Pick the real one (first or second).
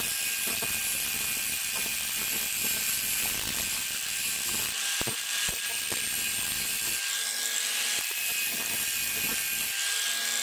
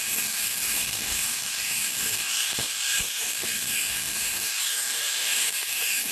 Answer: first